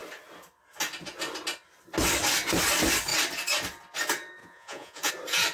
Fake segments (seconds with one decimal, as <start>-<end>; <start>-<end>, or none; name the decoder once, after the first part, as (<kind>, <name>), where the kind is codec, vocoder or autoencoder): 4.4-5.1 (vocoder, Vocos)